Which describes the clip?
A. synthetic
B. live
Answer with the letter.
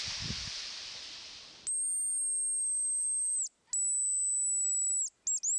B